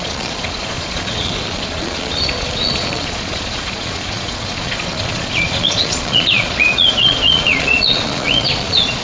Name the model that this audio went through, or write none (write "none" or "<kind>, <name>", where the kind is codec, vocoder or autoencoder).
vocoder, Vocos